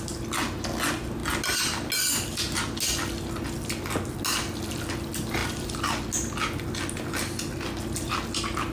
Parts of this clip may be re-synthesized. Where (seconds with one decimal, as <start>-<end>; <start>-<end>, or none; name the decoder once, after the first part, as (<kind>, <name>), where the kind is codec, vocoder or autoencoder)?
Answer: none